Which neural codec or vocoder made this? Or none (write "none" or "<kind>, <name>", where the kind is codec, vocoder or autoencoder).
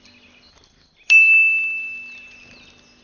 none